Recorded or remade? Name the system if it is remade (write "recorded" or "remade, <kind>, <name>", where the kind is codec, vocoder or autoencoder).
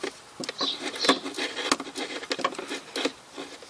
recorded